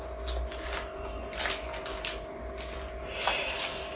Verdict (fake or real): real